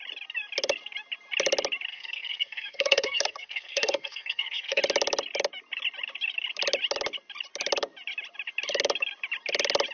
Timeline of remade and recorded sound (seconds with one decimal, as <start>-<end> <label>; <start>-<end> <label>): 0.0-1.9 recorded; 1.9-4.8 remade; 4.8-9.9 recorded